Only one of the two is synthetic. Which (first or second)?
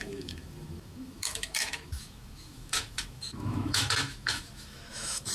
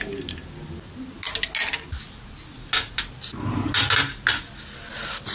first